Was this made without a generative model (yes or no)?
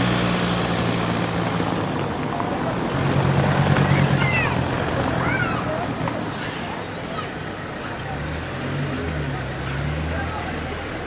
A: yes